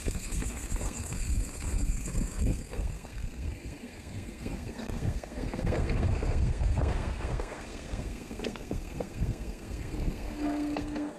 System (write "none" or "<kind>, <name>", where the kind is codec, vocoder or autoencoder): codec, SNAC